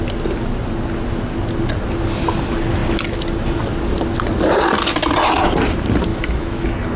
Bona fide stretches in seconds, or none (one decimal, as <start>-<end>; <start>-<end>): 0.0-6.1